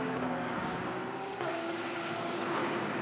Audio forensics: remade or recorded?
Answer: remade